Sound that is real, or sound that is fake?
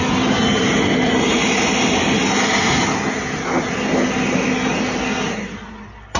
real